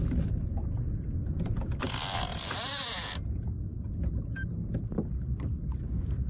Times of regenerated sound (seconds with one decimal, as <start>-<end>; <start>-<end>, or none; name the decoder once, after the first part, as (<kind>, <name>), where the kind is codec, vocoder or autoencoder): none